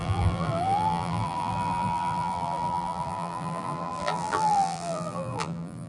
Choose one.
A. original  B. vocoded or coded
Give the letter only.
B